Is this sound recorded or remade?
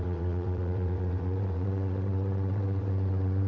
remade